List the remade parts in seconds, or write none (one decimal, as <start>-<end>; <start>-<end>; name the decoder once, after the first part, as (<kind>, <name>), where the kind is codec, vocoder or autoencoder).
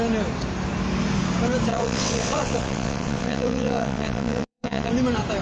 1.7-4.9 (vocoder, WaveNeXt)